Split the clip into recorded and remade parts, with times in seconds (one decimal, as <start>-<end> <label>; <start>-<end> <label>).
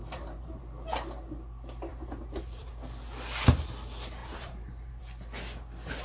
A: 0.0-0.6 remade; 0.6-1.9 recorded; 1.9-2.7 remade; 2.7-4.2 recorded; 4.2-5.0 remade; 5.0-6.0 recorded